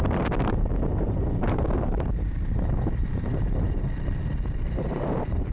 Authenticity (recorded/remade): remade